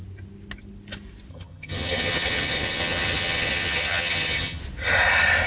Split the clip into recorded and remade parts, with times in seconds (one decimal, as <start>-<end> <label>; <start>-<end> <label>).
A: 0.0-1.3 recorded; 1.3-4.6 remade; 4.6-5.5 recorded